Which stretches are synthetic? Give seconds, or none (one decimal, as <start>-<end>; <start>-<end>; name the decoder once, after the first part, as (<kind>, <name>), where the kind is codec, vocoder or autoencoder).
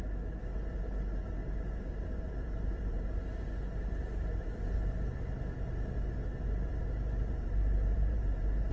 1.4-4.9 (vocoder, BigVGAN v2); 6.7-8.7